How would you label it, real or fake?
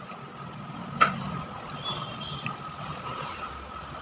real